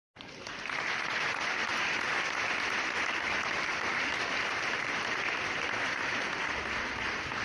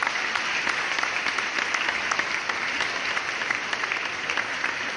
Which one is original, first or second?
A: second